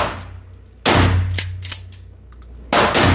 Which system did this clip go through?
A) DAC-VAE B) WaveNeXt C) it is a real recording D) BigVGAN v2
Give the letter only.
C